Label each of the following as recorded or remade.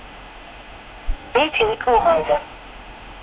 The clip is remade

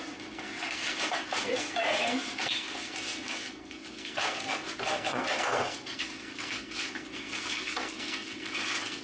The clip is remade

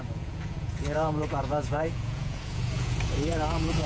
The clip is remade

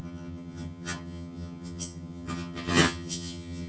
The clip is remade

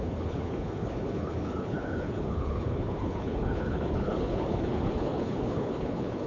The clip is remade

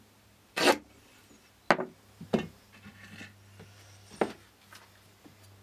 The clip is recorded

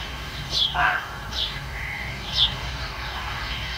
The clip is remade